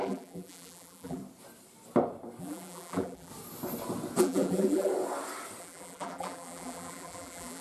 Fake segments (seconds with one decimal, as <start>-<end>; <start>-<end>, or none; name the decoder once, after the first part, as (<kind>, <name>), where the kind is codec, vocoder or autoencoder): 0.0-1.2 (vocoder, BigVGAN v2); 2.4-3.3; 4.2-4.9; 5.6-7.6